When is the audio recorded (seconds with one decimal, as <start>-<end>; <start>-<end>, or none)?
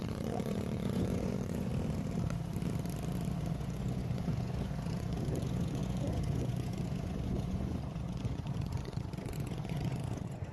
1.7-3.5